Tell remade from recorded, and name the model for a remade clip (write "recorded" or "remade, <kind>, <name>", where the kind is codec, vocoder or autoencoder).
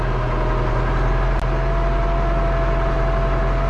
recorded